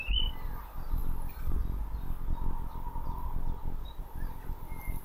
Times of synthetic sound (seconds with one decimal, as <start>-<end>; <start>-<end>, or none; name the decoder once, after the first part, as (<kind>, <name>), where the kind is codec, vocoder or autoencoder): 0.0-1.0 (vocoder, BigVGAN v2); 4.0-5.0